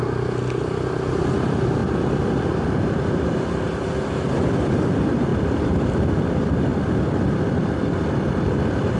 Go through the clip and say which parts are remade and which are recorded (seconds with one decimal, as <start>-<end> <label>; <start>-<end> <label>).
0.0-9.0 recorded